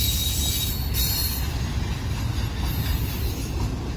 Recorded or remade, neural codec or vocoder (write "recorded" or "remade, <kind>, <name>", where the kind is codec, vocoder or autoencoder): recorded